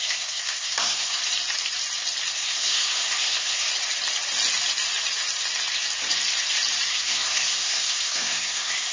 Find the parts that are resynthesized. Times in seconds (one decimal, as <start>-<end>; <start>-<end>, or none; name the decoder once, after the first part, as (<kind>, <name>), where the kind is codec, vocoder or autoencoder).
0.0-1.2 (codec, SNAC); 2.3-3.7; 6.9-8.9